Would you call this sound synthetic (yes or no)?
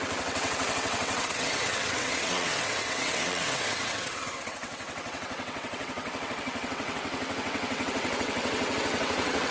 yes